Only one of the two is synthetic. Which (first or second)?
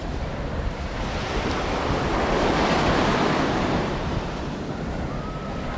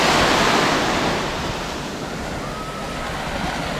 first